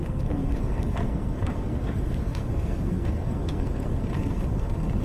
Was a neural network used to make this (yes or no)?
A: yes